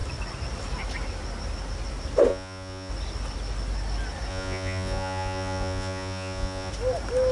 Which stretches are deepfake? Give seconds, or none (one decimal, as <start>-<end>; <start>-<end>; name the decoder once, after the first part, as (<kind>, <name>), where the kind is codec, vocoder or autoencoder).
2.3-2.9 (vocoder, Vocos); 4.3-6.7